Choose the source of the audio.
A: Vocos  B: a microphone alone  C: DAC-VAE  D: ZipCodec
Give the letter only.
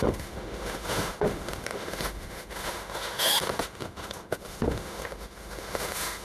C